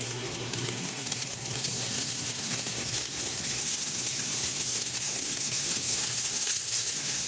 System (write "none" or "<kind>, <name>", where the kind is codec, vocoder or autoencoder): codec, SNAC